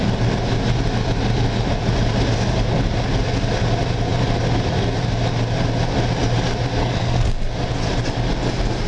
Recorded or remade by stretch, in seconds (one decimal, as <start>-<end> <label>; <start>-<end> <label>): 0.0-6.8 recorded; 6.8-7.5 remade; 7.5-8.9 recorded